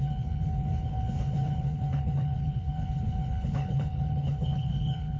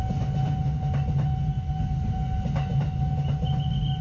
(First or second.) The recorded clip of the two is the second